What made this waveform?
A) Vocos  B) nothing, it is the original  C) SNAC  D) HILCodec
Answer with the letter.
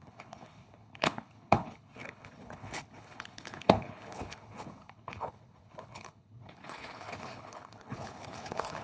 D